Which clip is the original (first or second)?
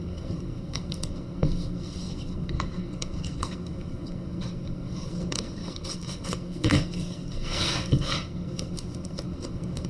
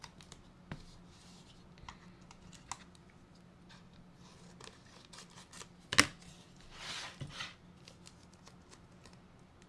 second